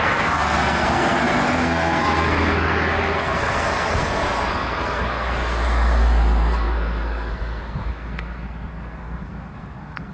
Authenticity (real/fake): fake